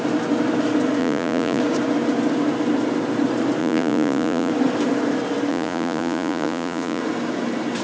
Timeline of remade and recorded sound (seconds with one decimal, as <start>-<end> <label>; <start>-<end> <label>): 0.0-1.0 recorded; 1.0-1.6 remade; 1.6-3.6 recorded; 3.6-4.5 remade; 4.5-5.5 recorded; 5.5-7.0 remade; 7.0-7.8 recorded